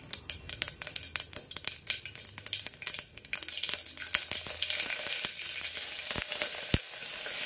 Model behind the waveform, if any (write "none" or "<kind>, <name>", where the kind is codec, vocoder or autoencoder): none